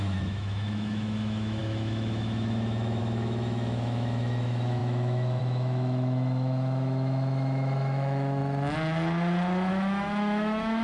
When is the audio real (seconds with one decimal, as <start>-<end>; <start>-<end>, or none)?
8.4-9.7